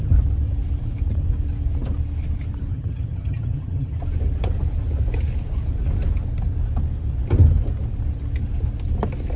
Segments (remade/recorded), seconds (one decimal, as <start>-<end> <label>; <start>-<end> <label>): 0.0-2.7 recorded; 2.7-4.0 remade; 4.0-9.4 recorded